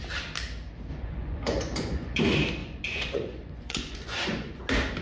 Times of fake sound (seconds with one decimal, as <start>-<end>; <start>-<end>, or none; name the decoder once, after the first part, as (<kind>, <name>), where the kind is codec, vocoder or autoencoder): 0.9-2.2 (vocoder, Vocos); 2.6-4.6